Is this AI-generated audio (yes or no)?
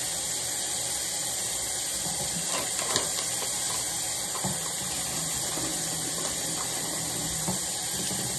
no